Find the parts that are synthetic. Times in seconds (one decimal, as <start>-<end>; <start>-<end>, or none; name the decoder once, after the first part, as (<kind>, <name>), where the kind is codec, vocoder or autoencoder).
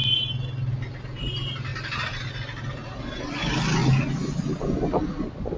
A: none